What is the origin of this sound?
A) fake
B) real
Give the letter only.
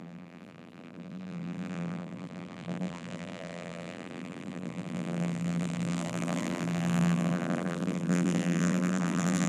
A